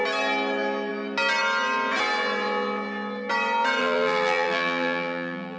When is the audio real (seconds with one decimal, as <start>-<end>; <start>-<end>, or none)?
0.0-3.8